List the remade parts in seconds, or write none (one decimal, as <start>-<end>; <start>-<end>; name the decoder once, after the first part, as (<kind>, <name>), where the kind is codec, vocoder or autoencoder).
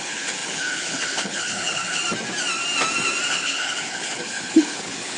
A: 0.0-2.0 (codec, HILCodec); 3.3-5.2